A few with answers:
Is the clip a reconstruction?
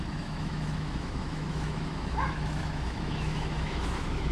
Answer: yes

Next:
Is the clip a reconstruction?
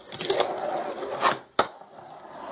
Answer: no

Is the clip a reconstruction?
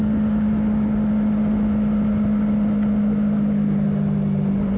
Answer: no